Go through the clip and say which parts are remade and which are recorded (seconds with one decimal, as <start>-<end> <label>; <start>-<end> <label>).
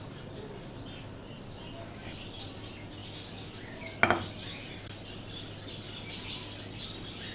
0.0-7.3 recorded